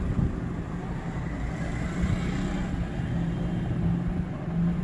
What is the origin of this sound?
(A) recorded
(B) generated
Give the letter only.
A